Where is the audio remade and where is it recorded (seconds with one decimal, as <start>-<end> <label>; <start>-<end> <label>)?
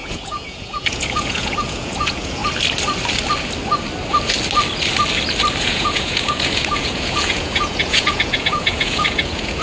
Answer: 0.0-2.4 remade; 2.4-5.6 recorded; 5.6-9.6 remade